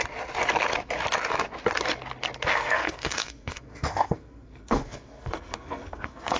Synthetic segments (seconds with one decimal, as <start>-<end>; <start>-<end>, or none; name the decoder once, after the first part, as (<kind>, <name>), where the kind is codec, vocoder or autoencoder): 2.5-6.4 (codec, SNAC)